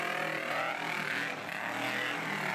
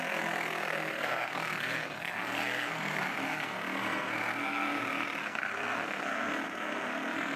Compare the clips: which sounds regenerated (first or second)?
second